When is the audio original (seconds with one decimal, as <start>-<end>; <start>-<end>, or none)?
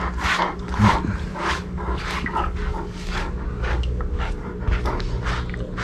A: 0.0-1.3; 4.4-5.8